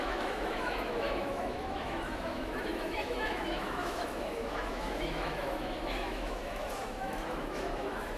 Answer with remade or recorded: remade